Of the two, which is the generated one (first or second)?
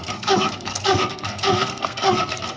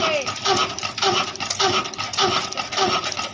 first